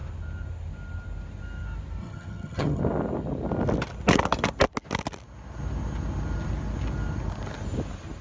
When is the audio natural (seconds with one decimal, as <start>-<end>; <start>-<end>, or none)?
0.0-2.0; 2.8-8.2